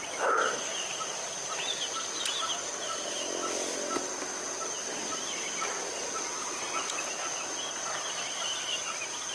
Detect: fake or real real